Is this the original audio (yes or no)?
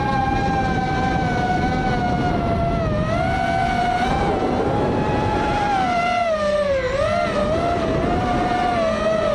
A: yes